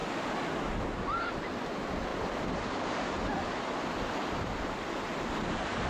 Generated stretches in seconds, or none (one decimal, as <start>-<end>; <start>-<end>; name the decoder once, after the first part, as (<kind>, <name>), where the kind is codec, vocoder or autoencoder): none